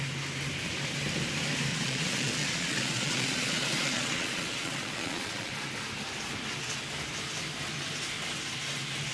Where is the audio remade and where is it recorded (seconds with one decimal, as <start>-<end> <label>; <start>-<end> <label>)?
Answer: 0.0-1.7 recorded; 1.7-5.5 remade; 5.5-9.1 recorded